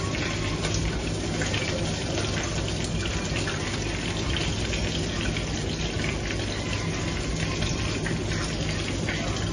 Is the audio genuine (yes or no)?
yes